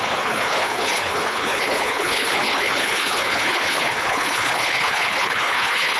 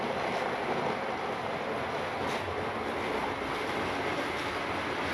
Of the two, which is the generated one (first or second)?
first